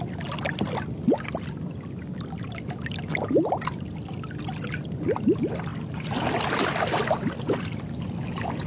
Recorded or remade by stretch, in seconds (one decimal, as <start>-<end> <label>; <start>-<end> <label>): 0.0-8.7 recorded